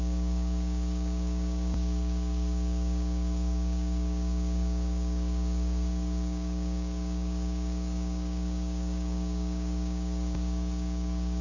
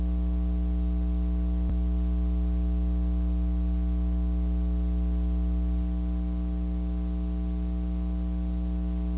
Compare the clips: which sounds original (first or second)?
second